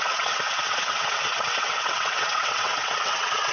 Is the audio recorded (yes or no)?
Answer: no